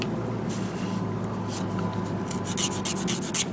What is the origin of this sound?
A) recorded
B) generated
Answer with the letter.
A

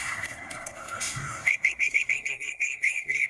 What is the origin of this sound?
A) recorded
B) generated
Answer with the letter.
B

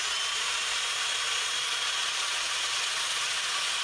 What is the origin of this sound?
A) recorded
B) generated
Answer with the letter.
B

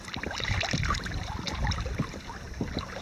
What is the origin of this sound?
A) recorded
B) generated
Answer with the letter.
A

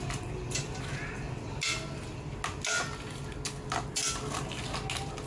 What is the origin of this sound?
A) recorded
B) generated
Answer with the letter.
A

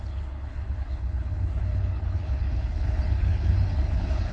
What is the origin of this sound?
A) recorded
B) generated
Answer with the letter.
B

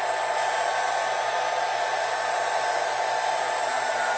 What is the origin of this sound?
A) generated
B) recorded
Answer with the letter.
B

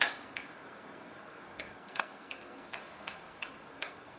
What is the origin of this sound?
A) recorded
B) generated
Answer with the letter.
B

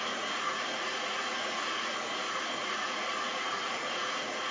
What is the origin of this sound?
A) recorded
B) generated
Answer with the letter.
B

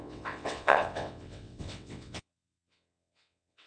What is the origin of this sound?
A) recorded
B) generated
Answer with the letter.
B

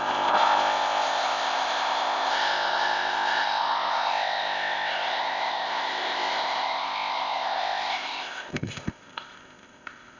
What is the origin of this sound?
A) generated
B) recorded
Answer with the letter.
A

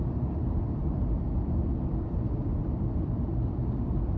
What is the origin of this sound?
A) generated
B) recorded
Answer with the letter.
A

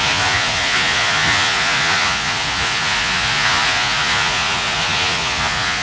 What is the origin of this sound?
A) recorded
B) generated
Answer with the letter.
B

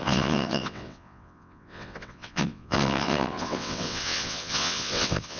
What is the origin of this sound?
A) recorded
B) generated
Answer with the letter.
B